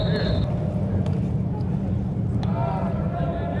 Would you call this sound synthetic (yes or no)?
no